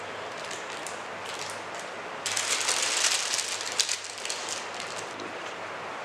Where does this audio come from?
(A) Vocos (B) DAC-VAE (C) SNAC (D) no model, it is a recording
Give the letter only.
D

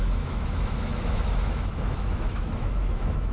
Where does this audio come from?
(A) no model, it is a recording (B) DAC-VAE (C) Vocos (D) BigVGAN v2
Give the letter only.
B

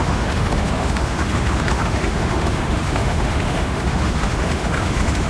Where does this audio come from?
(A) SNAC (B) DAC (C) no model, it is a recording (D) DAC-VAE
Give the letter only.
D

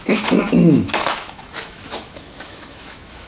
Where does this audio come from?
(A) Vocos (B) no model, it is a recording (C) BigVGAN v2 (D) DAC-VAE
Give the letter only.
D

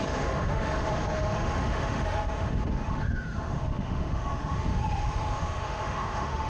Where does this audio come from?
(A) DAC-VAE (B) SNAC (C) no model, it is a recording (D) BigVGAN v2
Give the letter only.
A